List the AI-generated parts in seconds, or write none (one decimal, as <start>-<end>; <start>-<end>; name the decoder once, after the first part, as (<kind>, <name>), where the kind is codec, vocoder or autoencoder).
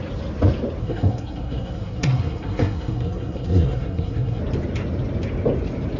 0.8-4.4 (codec, SNAC)